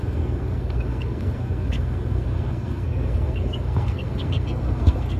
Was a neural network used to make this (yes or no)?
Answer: yes